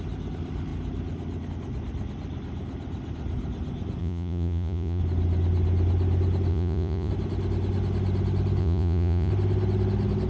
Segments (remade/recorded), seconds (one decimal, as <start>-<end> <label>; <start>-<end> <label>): 0.0-4.0 recorded; 4.0-5.0 remade; 5.0-6.5 recorded; 6.5-7.1 remade; 7.1-8.6 recorded; 8.6-9.3 remade; 9.3-10.3 recorded